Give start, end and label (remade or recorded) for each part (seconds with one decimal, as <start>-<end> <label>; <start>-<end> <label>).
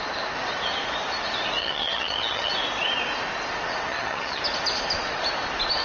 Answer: 0.0-1.6 recorded; 1.6-2.5 remade; 2.5-3.9 recorded; 3.9-4.4 remade; 4.4-5.8 recorded